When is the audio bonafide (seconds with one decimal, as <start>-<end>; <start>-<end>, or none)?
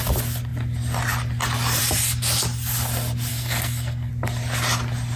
0.0-3.3; 4.1-5.2